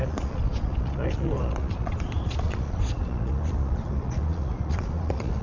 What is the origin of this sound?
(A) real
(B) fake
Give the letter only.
B